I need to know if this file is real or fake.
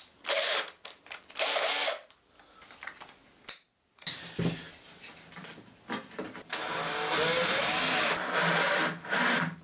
real